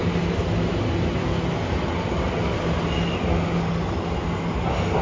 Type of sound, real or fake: real